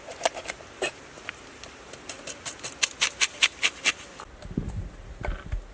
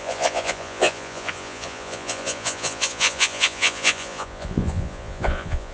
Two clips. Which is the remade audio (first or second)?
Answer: second